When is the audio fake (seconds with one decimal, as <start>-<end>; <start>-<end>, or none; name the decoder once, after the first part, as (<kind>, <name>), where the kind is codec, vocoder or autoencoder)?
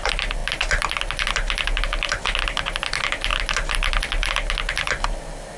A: none